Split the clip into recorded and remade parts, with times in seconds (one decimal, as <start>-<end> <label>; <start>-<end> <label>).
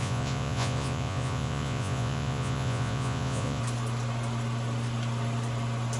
0.0-3.6 remade; 3.6-6.0 recorded